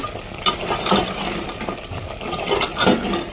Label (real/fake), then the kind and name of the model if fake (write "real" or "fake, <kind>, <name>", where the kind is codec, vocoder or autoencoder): real